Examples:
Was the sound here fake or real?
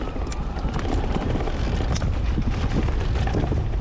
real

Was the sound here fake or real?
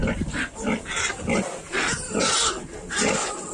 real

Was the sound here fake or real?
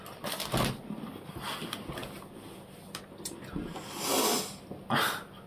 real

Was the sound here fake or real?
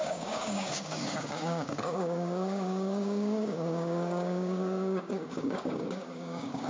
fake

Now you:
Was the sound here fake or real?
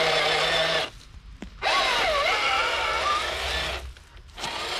real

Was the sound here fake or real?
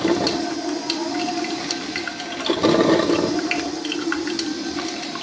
fake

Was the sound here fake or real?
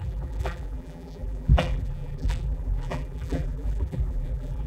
fake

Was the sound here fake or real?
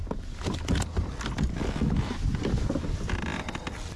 real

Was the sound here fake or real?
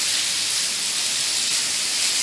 real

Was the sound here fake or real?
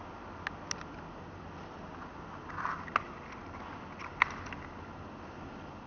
real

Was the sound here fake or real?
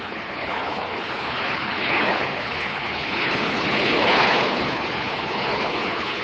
fake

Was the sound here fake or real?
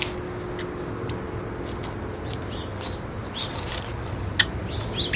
real